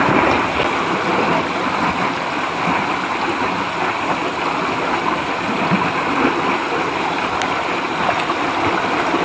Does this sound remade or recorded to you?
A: recorded